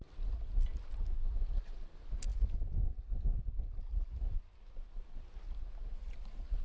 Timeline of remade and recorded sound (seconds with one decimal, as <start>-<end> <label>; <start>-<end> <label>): 0.0-6.6 recorded